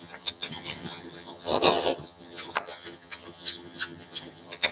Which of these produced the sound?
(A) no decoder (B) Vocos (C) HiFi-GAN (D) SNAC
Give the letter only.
C